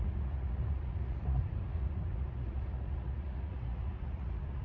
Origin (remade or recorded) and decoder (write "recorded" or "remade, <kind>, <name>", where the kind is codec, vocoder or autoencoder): remade, vocoder, Vocos